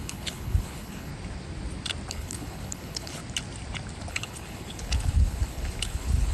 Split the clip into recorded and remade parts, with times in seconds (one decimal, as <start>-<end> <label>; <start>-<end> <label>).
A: 0.0-1.1 remade; 1.1-2.1 recorded; 2.1-3.2 remade; 3.2-4.1 recorded; 4.1-6.3 remade